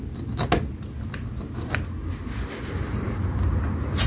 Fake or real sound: real